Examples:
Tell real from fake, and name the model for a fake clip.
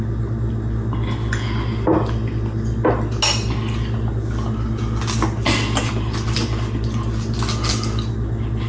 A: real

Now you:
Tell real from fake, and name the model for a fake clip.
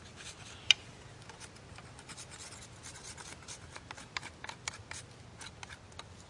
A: real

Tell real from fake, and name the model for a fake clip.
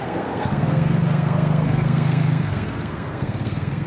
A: fake, codec, SNAC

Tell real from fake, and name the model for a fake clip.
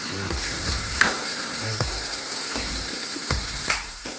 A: fake, codec, SNAC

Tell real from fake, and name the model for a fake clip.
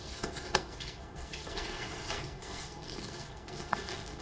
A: fake, codec, SNAC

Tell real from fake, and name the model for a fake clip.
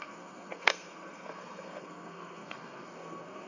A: fake, codec, SNAC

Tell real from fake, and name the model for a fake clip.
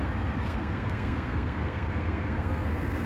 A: fake, codec, SNAC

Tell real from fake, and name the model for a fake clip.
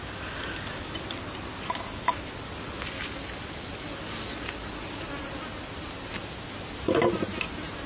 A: real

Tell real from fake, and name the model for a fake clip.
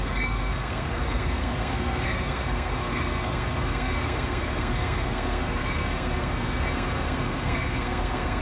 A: fake, codec, SNAC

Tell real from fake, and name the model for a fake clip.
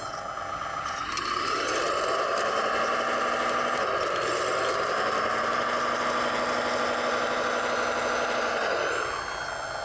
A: real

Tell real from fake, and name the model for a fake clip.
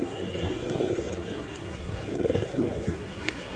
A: fake, codec, SNAC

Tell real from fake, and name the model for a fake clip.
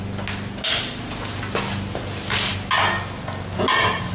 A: real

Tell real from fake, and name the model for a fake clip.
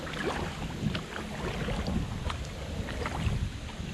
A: real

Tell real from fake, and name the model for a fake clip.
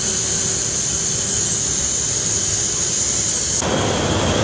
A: real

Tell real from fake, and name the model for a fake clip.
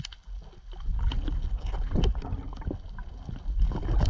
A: real